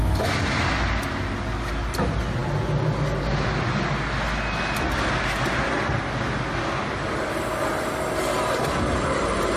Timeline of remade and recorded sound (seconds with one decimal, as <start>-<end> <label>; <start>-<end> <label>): 0.0-9.6 recorded